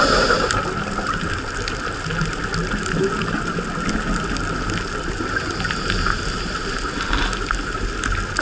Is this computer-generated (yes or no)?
no